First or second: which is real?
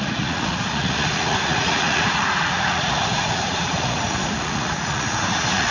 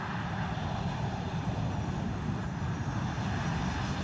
second